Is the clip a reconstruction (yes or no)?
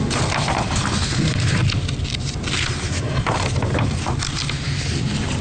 no